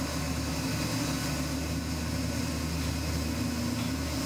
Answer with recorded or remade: recorded